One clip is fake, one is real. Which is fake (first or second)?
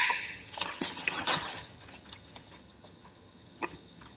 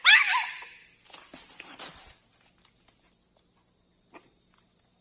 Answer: first